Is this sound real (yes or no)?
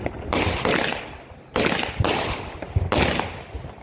yes